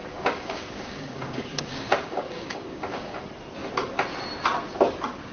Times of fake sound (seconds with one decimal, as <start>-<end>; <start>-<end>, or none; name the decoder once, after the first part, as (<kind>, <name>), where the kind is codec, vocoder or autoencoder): 0.0-3.2 (codec, DAC)